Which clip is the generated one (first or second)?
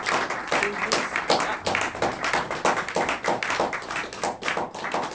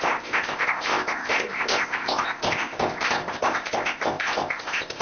second